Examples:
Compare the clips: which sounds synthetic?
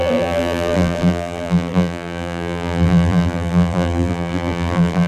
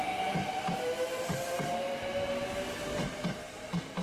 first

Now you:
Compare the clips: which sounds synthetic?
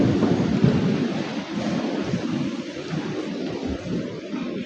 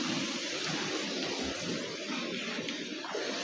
first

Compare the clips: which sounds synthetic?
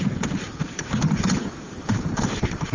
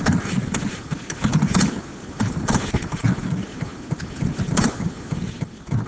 first